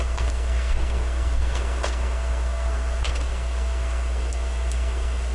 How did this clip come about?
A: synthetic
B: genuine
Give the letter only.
A